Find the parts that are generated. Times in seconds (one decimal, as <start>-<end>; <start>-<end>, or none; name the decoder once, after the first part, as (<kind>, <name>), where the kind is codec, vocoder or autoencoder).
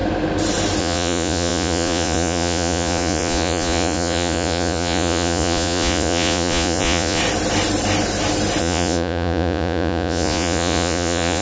0.8-7.2 (vocoder, Vocos); 8.6-11.4